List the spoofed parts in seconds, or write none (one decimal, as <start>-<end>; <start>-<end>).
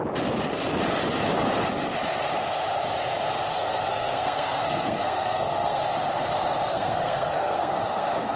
3.5-5.8; 6.7-8.4